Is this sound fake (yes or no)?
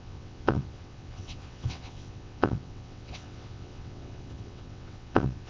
yes